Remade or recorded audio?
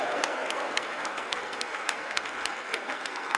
remade